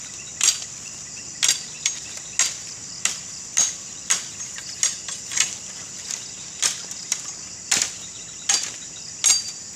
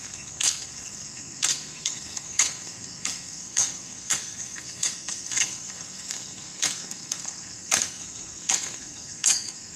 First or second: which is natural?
first